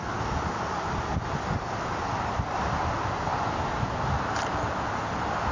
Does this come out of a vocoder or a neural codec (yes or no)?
no